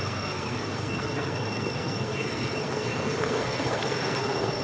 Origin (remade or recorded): remade